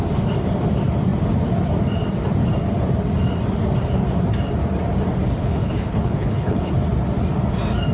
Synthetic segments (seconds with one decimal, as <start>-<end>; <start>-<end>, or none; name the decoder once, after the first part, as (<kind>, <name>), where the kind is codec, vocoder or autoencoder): 5.4-6.7 (codec, HILCodec)